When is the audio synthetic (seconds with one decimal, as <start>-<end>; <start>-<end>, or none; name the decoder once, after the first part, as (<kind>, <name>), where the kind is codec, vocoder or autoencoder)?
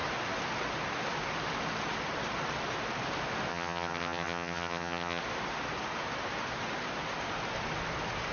3.5-5.2 (vocoder, HiFi-GAN)